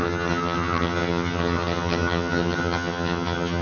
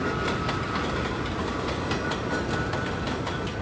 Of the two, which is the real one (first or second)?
second